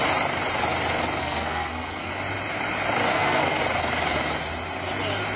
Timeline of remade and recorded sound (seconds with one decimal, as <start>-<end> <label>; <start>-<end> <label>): 0.0-1.2 recorded; 1.2-2.1 remade; 2.1-3.1 recorded; 3.1-3.6 remade; 3.6-5.4 recorded